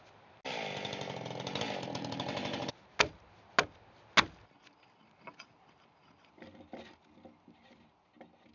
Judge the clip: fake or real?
real